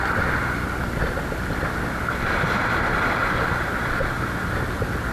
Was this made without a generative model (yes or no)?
yes